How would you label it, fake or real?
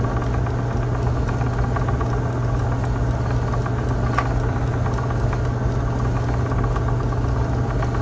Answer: real